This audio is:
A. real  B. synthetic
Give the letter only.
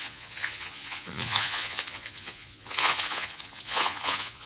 B